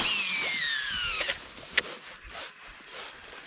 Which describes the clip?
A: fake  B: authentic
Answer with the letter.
B